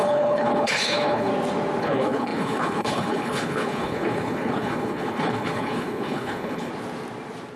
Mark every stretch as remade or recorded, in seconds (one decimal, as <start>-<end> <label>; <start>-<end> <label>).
0.0-1.3 remade; 1.3-1.8 recorded; 1.8-6.7 remade; 6.7-7.6 recorded